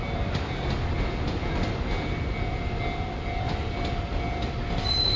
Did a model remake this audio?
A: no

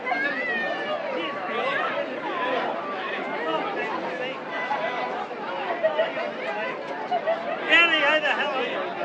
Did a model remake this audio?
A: no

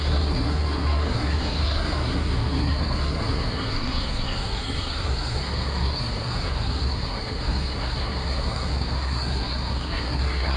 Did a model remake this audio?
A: yes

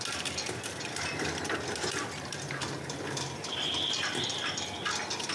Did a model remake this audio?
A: no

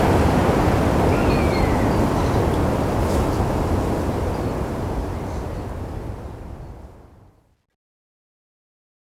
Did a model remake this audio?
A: no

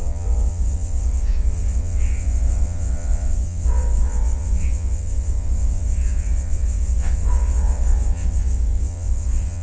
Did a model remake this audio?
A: yes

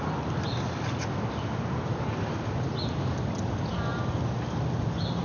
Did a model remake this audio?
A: no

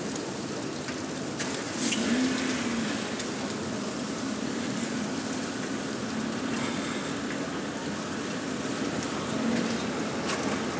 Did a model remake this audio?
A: no